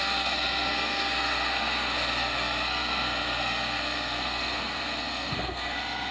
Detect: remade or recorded remade